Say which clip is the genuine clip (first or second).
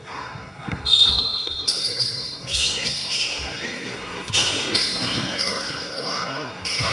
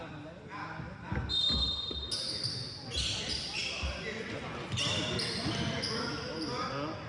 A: second